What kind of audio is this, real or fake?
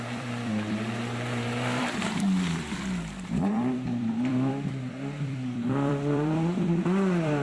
fake